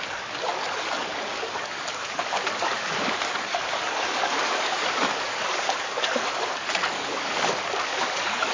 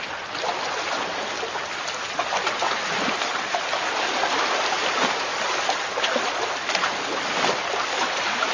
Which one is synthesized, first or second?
first